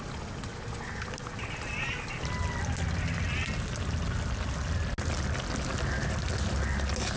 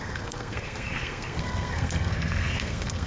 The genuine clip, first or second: first